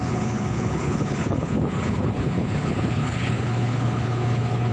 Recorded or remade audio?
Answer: remade